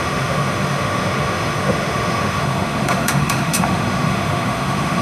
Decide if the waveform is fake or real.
fake